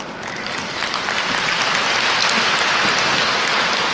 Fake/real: real